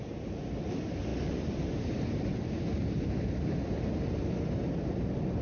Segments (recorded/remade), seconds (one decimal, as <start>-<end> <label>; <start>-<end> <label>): 0.0-1.1 recorded; 1.1-3.8 remade; 3.8-5.4 recorded